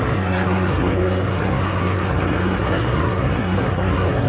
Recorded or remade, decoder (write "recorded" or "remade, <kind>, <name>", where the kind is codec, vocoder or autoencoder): remade, codec, SNAC